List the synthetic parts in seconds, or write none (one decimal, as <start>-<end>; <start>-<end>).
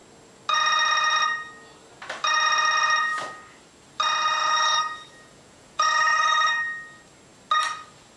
4.4-6.1